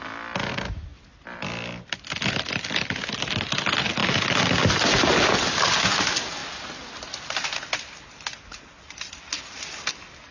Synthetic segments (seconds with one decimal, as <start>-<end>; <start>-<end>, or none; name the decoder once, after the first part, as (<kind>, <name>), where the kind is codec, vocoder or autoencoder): none